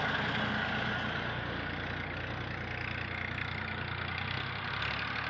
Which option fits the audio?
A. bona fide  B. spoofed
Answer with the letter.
A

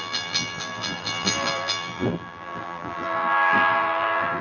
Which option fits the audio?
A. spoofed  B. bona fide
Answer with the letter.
A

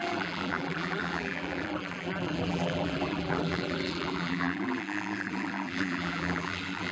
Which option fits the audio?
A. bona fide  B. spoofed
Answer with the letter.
B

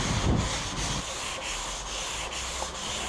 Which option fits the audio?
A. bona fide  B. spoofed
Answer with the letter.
A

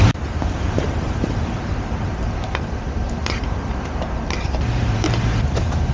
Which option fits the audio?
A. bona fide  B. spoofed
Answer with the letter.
B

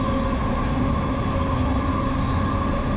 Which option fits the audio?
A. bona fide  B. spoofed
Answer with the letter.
A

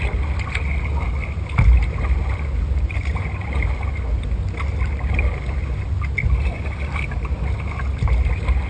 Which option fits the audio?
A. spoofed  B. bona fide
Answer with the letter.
B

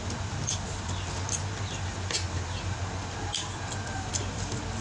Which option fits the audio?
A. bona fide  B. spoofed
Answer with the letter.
A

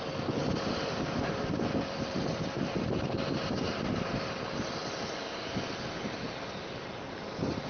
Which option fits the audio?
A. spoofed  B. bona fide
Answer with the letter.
A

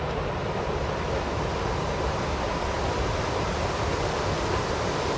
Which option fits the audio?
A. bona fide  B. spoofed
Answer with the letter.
A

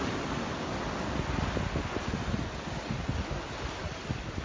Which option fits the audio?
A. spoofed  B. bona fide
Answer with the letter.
B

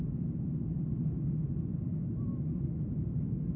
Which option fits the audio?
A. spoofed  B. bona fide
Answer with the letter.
B